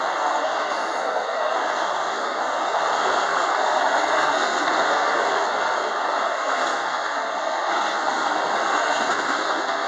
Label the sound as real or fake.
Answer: fake